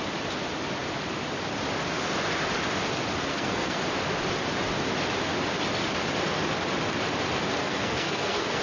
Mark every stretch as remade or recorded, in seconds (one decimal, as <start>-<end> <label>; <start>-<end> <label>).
0.0-3.3 recorded; 3.3-3.8 remade; 3.8-7.6 recorded; 7.6-8.6 remade